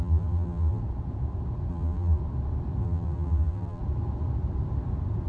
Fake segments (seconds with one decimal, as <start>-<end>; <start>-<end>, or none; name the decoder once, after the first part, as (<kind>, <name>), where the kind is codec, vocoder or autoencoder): 0.0-0.8 (vocoder, BigVGAN v2); 1.7-2.2; 2.8-3.8